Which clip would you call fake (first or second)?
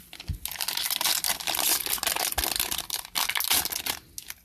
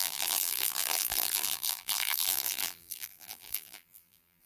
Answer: second